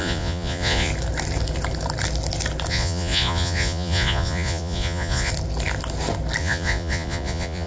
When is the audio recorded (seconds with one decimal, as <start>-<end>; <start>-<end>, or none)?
0.9-2.7; 5.3-6.4